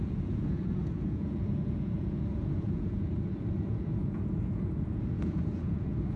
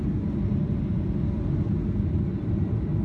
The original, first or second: second